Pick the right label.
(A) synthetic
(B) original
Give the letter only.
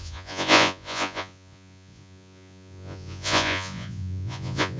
A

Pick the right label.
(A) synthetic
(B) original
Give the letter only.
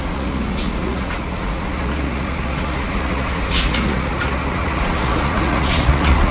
A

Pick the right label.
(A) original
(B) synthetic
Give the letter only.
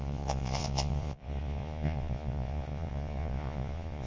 B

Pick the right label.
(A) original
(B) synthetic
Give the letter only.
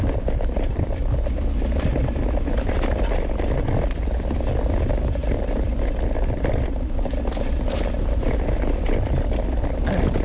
A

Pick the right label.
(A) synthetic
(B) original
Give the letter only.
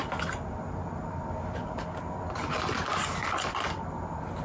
B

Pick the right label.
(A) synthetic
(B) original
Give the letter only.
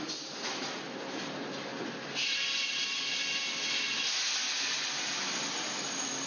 B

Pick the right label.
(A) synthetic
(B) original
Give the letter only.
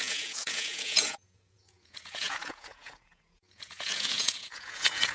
A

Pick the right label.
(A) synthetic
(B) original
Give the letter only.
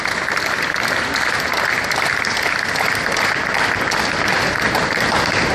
B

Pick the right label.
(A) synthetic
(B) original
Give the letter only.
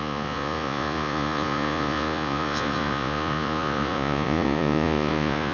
A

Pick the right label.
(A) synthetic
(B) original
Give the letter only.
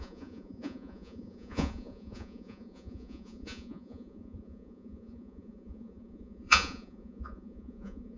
A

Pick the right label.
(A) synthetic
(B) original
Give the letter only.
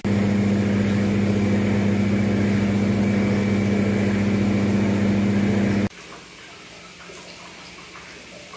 B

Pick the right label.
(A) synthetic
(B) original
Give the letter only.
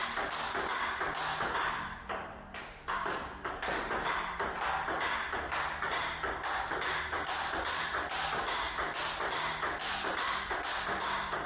B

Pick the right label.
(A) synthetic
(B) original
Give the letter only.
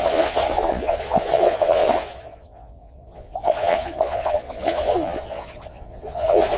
A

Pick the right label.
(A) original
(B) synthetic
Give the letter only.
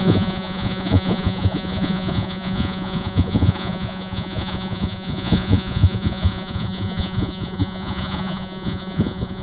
B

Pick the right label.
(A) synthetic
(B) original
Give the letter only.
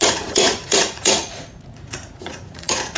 A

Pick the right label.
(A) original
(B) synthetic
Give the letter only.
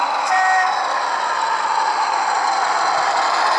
A